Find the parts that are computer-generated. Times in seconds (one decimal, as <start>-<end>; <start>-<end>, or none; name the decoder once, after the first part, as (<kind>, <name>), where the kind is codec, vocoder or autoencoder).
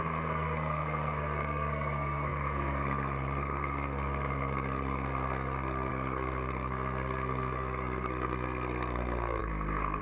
0.0-10.0 (codec, SNAC)